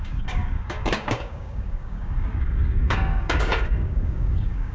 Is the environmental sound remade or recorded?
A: remade